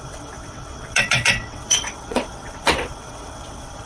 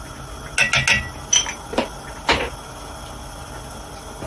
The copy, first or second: first